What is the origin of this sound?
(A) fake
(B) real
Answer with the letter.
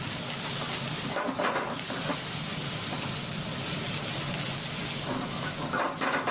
B